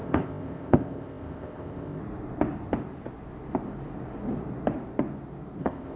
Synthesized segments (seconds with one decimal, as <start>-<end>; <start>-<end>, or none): 0.0-2.0; 5.6-6.0